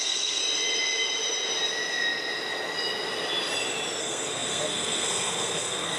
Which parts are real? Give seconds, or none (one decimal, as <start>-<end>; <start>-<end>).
0.4-4.0